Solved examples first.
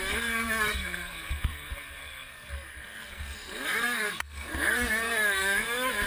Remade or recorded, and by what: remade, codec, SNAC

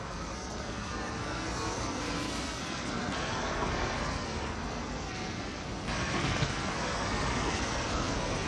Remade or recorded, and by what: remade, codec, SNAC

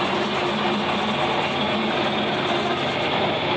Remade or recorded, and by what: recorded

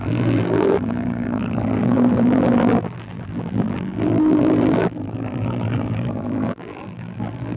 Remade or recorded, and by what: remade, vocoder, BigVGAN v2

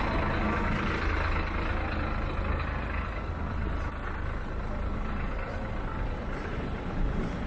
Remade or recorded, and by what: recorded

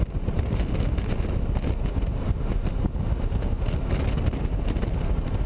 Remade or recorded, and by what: recorded